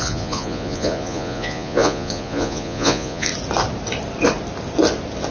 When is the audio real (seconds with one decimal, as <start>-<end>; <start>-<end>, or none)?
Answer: 3.3-5.3